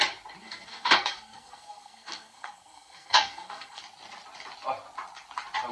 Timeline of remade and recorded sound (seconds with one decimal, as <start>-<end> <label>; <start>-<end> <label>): 0.0-0.4 recorded; 0.4-3.8 remade; 3.8-5.7 recorded